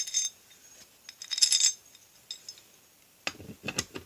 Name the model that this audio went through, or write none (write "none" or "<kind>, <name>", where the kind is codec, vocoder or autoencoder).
none